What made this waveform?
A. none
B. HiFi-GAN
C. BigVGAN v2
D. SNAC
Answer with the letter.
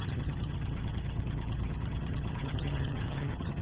B